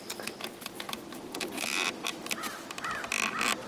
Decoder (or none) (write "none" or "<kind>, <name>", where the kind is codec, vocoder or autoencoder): none